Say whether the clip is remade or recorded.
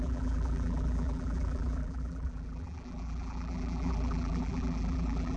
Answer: remade